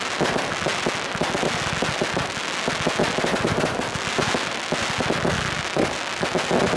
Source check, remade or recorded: recorded